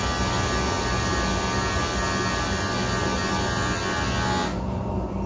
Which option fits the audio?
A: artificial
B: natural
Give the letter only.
B